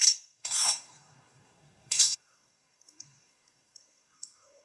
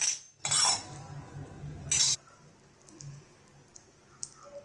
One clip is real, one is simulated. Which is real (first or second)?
second